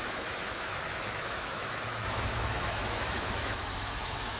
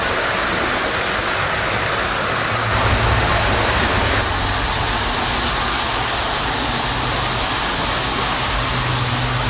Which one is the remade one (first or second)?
first